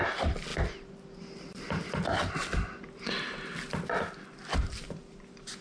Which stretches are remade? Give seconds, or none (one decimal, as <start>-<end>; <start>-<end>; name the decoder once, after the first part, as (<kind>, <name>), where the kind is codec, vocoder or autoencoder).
none